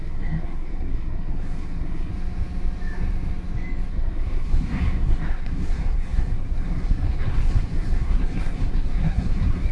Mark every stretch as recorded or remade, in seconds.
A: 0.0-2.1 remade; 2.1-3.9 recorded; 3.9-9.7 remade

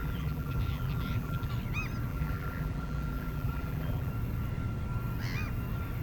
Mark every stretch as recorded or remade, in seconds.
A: 0.0-1.5 remade; 1.5-2.1 recorded; 2.1-4.1 remade; 4.1-6.0 recorded

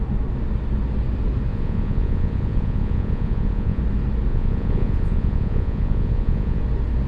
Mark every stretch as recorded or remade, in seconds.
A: 0.0-1.5 recorded; 1.5-3.8 remade; 3.8-4.3 recorded; 4.3-6.6 remade; 6.6-7.1 recorded

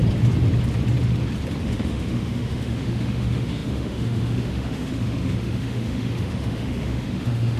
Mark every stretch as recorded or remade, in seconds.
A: 0.0-1.6 recorded; 1.6-7.6 remade